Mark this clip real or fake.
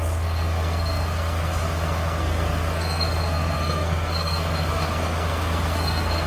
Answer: fake